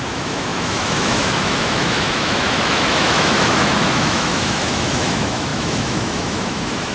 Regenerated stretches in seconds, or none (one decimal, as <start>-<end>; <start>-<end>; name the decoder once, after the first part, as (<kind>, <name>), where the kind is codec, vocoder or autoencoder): 0.0-6.9 (autoencoder, DAC-VAE)